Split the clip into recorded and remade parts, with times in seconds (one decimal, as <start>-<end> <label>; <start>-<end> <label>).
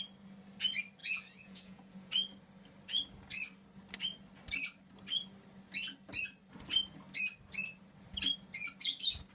0.0-1.0 recorded; 1.0-2.1 remade; 2.1-9.3 recorded